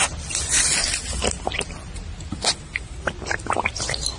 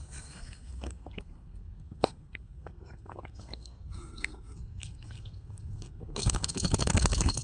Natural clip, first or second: first